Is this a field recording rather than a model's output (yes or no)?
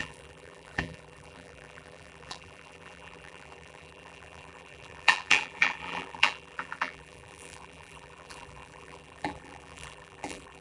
no